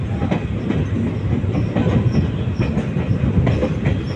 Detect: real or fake real